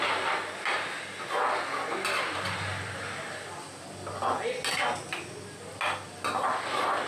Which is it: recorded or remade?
recorded